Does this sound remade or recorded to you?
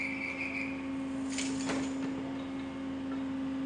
recorded